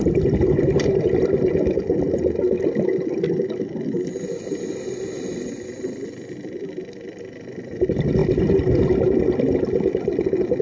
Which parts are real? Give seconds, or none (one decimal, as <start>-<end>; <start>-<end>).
8.2-9.9